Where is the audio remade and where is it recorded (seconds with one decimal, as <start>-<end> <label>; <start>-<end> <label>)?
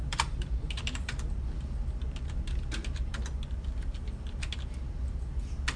0.0-0.6 remade; 0.6-5.8 recorded